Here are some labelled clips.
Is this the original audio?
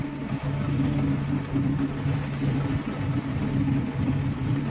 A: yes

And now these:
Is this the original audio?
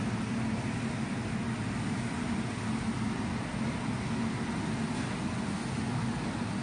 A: yes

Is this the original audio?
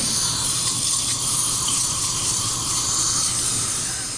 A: no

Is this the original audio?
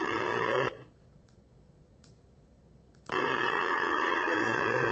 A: no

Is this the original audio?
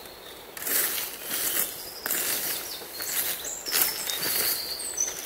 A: yes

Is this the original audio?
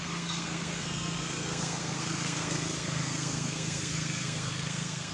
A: no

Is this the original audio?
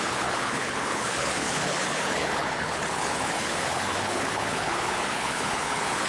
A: no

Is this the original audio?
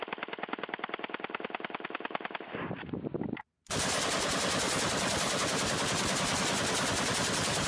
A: yes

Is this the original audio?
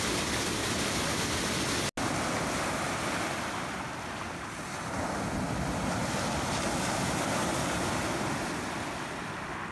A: yes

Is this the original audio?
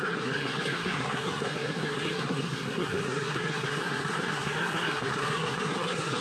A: no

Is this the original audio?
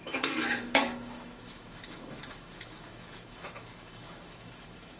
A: no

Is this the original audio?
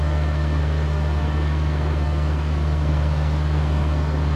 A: no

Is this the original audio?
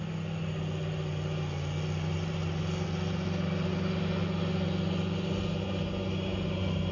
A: yes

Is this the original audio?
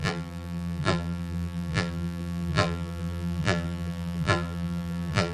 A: no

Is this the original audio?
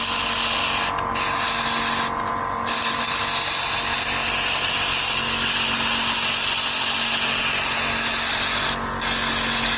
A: yes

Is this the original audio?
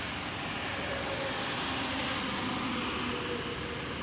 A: yes